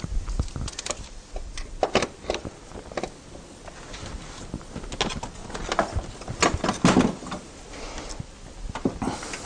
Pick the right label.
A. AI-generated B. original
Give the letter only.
B